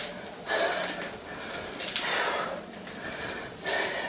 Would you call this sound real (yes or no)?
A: yes